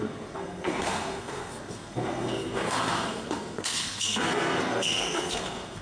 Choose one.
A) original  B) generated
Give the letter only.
B